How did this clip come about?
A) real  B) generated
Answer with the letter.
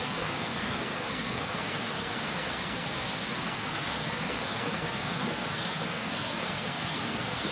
B